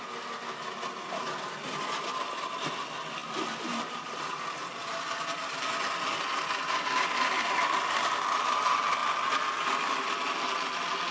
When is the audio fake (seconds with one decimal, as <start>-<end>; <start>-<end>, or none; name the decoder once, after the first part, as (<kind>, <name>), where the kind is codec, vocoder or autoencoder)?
3.2-4.0 (vocoder, BigVGAN v2); 4.8-5.5